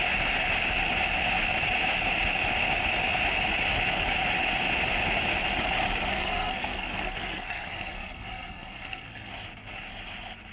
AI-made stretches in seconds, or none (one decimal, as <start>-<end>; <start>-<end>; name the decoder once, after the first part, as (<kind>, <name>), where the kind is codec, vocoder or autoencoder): 6.1-9.3 (codec, SNAC)